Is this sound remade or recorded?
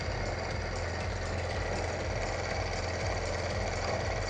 recorded